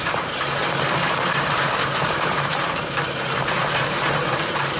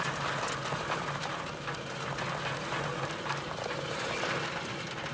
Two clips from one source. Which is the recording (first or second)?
second